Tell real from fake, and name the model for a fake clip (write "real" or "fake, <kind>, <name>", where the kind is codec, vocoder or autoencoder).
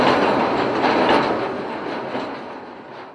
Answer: real